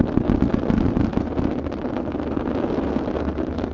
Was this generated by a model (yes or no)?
no